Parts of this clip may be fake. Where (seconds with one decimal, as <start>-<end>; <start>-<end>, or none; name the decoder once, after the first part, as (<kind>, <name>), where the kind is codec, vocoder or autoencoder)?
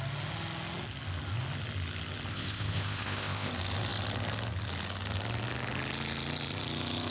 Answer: 2.3-3.5 (codec, ZipCodec)